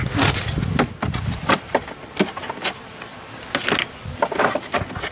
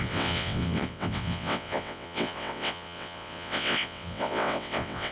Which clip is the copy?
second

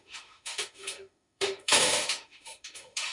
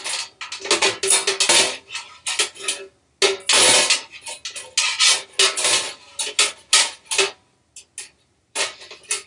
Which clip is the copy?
first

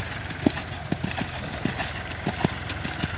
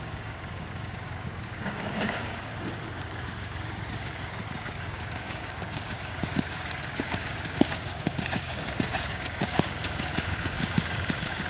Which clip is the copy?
second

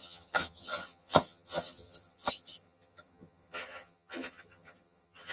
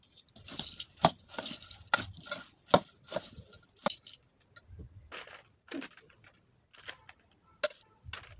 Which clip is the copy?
first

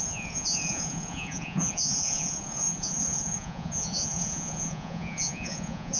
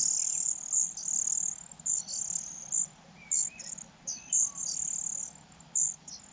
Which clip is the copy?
first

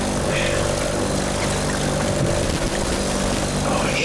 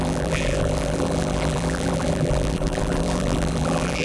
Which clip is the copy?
second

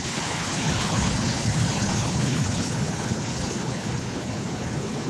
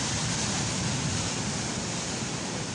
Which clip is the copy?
first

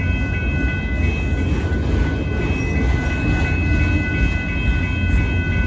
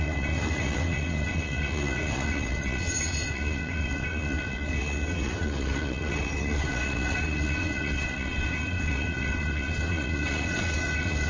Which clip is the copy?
second